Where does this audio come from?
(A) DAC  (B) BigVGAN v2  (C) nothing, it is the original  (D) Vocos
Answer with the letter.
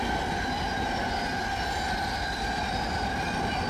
C